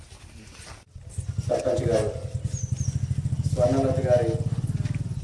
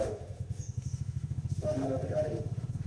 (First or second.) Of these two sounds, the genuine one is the first